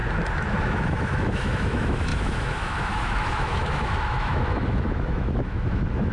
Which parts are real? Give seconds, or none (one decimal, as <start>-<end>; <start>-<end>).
0.0-0.6